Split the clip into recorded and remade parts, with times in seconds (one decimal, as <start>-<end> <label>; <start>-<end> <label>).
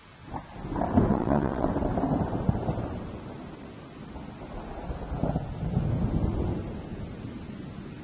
0.0-1.1 recorded; 1.1-1.7 remade; 1.7-8.0 recorded